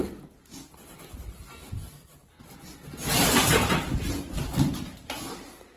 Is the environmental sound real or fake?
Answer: real